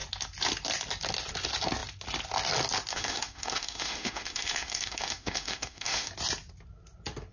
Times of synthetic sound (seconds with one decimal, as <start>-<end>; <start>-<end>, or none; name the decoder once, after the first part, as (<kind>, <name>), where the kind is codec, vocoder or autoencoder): 2.9-6.1 (autoencoder, DAC-VAE)